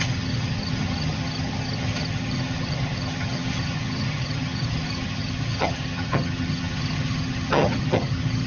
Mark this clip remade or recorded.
remade